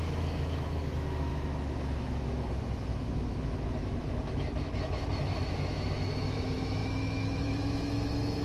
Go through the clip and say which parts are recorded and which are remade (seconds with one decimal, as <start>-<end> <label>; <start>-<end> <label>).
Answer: 0.0-8.4 remade